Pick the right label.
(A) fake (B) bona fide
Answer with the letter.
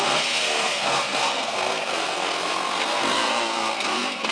A